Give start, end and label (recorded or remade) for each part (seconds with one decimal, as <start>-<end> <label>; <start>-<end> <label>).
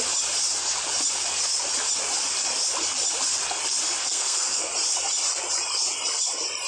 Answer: 0.0-4.0 recorded; 4.0-4.7 remade; 4.7-6.7 recorded